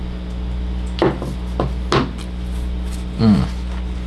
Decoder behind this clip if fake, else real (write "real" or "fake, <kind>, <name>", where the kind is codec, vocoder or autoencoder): real